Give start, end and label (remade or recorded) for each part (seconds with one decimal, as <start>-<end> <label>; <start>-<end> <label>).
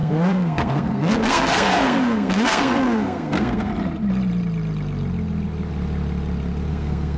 0.0-3.7 remade; 3.7-6.7 recorded; 6.7-7.2 remade